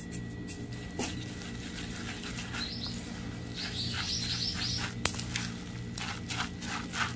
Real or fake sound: real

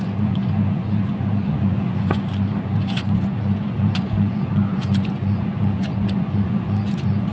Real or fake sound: fake